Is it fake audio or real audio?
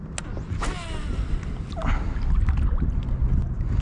real